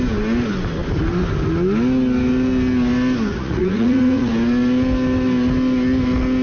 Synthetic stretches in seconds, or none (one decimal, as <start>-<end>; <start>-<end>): 3.3-4.3

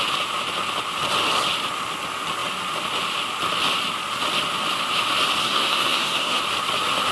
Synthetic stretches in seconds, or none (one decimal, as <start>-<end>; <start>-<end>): 5.4-6.4

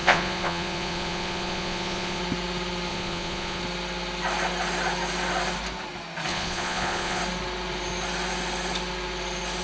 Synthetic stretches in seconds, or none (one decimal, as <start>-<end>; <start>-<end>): 0.0-2.2; 2.9-3.6; 6.3-7.2

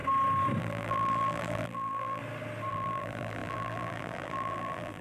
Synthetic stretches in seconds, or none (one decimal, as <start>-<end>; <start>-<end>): 0.6-2.2; 2.7-5.0

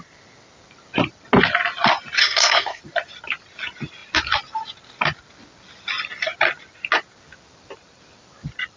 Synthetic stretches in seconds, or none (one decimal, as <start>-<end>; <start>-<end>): 2.2-2.8